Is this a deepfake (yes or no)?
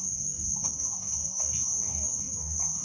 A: yes